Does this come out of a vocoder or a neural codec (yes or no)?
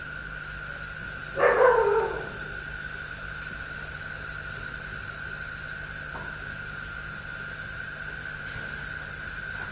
no